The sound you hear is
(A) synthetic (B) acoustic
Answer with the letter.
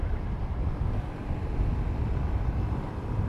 B